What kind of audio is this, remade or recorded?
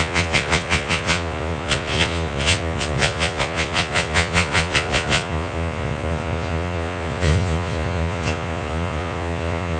remade